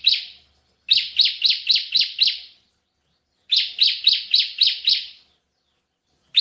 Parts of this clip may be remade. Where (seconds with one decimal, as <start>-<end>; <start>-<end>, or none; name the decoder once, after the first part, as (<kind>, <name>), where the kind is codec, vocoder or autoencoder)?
none